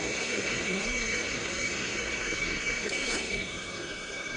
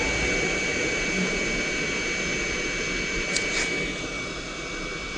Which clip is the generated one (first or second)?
first